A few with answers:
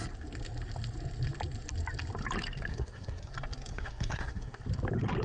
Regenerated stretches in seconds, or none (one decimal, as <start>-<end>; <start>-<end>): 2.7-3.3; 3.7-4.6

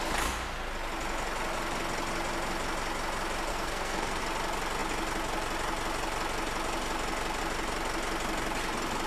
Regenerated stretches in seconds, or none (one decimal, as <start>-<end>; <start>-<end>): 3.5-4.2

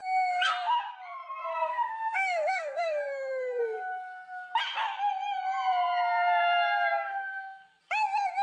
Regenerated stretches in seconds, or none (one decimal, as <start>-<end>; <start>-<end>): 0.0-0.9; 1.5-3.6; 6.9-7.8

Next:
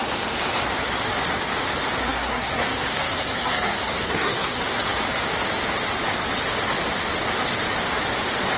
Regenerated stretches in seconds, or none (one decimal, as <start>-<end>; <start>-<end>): 2.0-4.6

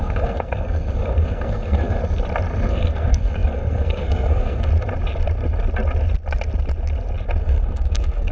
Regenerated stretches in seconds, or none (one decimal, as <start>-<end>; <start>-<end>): 0.0-2.0; 2.7-4.7; 7.4-8.3